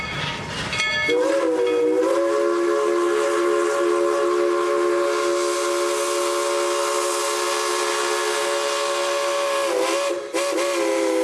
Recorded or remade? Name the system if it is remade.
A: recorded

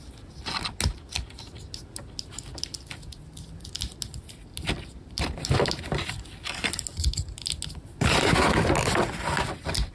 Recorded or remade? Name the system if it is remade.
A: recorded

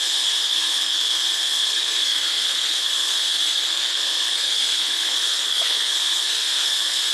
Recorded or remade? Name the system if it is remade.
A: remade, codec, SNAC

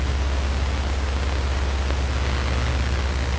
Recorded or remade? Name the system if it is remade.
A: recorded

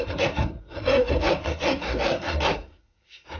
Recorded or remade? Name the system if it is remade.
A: remade, codec, SNAC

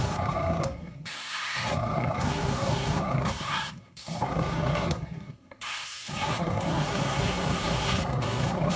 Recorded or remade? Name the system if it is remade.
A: remade, codec, SNAC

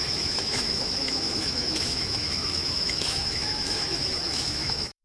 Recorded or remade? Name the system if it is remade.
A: remade, autoencoder, DAC-VAE